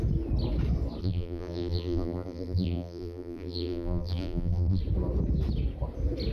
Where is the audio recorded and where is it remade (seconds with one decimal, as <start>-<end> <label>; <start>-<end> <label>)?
0.0-1.0 recorded; 1.0-4.8 remade; 4.8-6.3 recorded